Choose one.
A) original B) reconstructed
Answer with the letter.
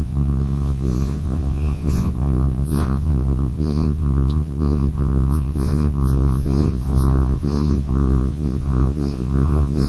B